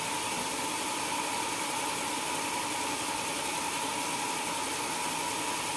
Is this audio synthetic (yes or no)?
yes